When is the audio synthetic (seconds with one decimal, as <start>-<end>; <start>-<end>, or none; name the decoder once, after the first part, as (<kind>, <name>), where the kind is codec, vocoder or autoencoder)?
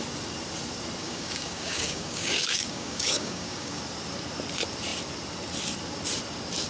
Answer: 1.0-3.8 (codec, DAC)